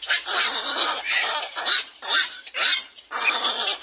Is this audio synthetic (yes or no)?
yes